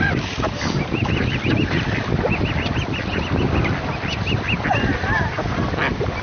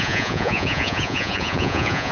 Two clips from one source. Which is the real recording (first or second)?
first